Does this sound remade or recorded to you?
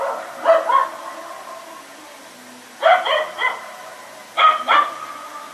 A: recorded